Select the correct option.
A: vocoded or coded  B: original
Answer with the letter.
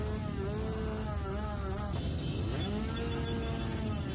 B